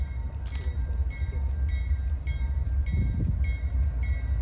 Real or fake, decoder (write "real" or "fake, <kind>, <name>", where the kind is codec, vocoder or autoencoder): real